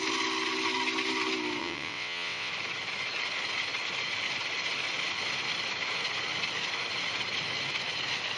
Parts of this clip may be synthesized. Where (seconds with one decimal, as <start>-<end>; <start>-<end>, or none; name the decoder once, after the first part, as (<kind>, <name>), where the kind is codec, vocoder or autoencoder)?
1.6-2.5 (vocoder, WaveNeXt)